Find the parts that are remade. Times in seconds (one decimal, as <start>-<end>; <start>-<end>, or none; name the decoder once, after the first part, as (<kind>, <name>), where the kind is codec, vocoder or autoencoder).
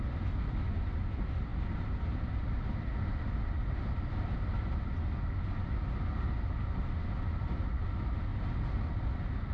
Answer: 8.3-8.9 (vocoder, BigVGAN v2)